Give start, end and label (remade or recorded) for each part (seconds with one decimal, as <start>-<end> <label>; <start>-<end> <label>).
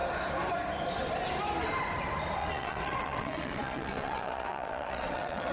0.0-2.4 recorded; 2.4-5.5 remade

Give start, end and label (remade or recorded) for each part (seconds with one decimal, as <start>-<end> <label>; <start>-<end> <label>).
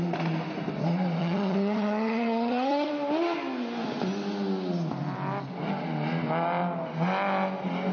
0.0-1.2 recorded; 1.2-2.9 remade; 2.9-7.9 recorded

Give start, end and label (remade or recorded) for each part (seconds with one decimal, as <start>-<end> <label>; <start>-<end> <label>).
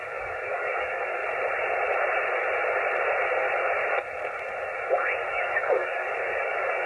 0.0-1.2 remade; 1.2-5.3 recorded; 5.3-6.9 remade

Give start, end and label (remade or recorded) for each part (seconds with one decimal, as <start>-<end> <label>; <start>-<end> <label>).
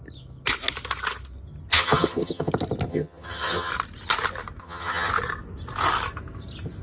0.0-1.7 recorded; 1.7-2.5 remade; 2.5-2.9 recorded; 2.9-3.7 remade; 3.7-4.6 recorded; 4.6-5.1 remade; 5.1-6.8 recorded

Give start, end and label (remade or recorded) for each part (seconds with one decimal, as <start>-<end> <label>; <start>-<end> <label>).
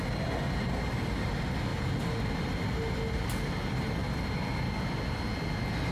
0.0-5.9 recorded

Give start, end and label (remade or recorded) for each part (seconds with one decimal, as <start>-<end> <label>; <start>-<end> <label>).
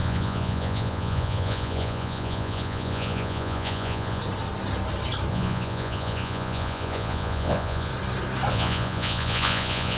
0.0-4.2 remade; 4.2-5.3 recorded; 5.3-7.9 remade; 7.9-8.5 recorded; 8.5-10.0 remade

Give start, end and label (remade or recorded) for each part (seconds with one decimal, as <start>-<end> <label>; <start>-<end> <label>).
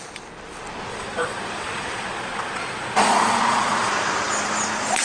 0.0-0.9 recorded; 0.9-3.9 remade; 3.9-5.0 recorded